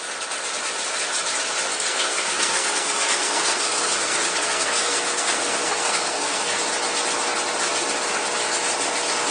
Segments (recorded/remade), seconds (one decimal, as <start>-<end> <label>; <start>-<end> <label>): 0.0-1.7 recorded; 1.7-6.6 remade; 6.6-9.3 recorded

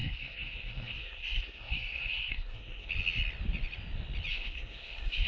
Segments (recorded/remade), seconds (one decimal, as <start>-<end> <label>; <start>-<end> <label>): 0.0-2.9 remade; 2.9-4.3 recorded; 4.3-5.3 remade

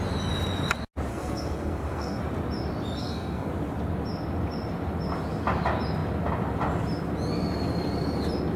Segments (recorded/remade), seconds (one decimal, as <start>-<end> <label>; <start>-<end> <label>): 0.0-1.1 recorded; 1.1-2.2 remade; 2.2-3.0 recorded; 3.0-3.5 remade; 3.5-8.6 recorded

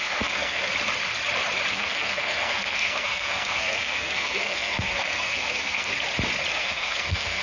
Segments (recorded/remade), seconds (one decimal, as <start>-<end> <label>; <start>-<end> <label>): 0.0-0.7 remade; 0.7-1.7 recorded; 1.7-5.9 remade; 5.9-6.5 recorded; 6.5-7.4 remade

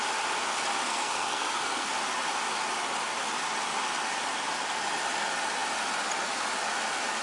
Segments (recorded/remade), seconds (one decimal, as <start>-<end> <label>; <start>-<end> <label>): 0.0-0.9 recorded; 0.9-1.9 remade; 1.9-7.2 recorded

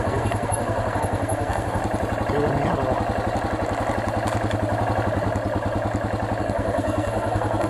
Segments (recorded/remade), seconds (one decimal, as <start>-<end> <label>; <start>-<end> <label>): 0.0-1.8 remade; 1.8-6.4 recorded; 6.4-7.7 remade

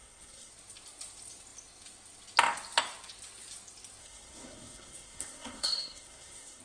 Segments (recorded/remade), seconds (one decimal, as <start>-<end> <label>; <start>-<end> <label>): 0.0-0.5 remade; 0.5-4.0 recorded; 4.0-6.6 remade